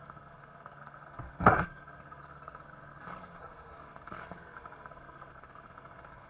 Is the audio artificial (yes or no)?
yes